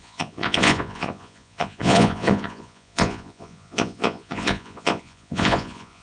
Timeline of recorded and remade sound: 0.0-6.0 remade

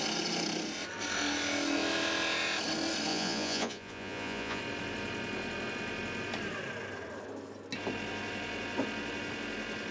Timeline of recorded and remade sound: 0.0-3.1 recorded; 3.1-4.6 remade; 4.6-9.9 recorded

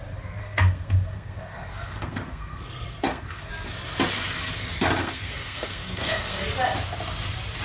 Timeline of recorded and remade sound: 0.0-0.4 recorded; 0.4-3.5 remade; 3.5-5.0 recorded; 5.0-6.5 remade; 6.5-7.6 recorded

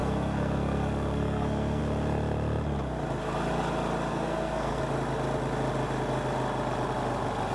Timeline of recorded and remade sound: 0.0-1.8 remade; 1.8-4.1 recorded; 4.1-4.8 remade; 4.8-7.5 recorded

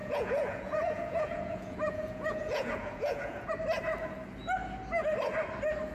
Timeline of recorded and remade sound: 0.0-3.5 remade; 3.5-5.9 recorded

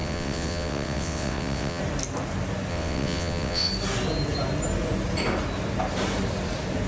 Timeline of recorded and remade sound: 0.0-1.8 remade; 1.8-2.7 recorded; 2.7-3.7 remade; 3.7-6.9 recorded